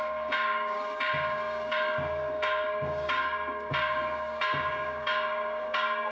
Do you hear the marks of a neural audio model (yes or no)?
yes